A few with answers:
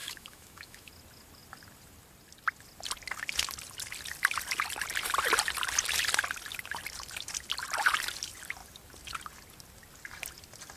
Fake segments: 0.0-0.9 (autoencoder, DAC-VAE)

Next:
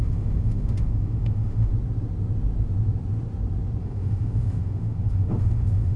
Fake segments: 0.0-1.7 (autoencoder, DAC-VAE); 3.8-6.0

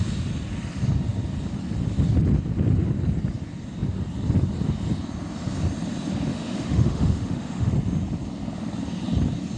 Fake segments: 6.3-7.7 (autoencoder, DAC-VAE)

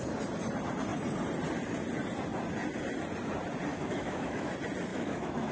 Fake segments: 3.7-4.5 (autoencoder, DAC-VAE); 4.9-5.5

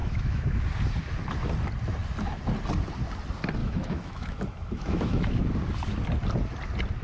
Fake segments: 0.0-0.6 (autoencoder, DAC-VAE); 3.6-5.4